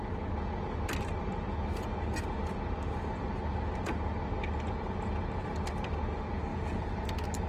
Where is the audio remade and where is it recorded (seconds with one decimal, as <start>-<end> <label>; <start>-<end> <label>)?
0.0-6.5 recorded; 6.5-7.1 remade; 7.1-7.5 recorded

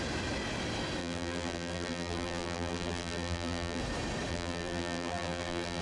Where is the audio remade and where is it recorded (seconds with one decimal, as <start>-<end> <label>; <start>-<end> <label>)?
0.0-1.0 recorded; 1.0-3.8 remade; 3.8-4.3 recorded; 4.3-5.8 remade

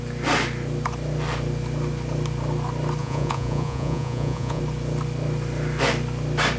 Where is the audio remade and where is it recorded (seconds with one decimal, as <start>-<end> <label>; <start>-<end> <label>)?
0.0-3.0 recorded; 3.0-4.6 remade; 4.6-6.6 recorded

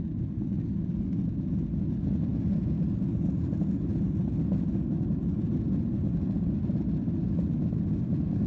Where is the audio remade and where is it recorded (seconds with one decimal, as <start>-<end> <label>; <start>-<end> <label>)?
0.0-8.5 recorded

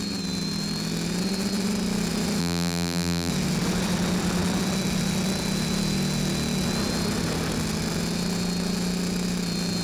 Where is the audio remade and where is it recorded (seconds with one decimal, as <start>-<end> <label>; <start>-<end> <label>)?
0.0-2.4 recorded; 2.4-3.3 remade; 3.3-9.8 recorded